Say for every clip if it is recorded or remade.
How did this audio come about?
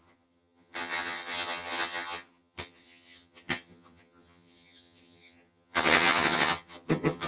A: remade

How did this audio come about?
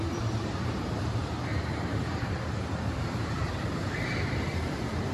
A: remade